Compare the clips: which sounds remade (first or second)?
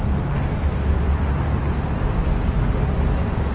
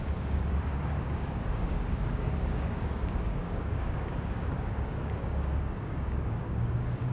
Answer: second